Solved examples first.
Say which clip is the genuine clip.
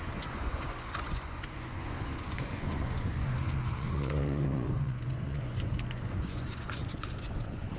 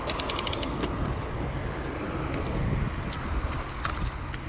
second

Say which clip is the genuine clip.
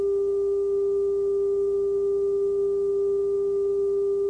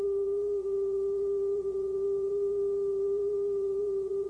first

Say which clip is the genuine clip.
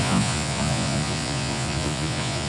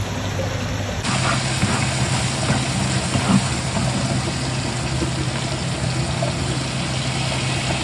second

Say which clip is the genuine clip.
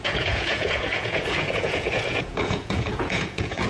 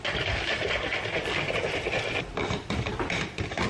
second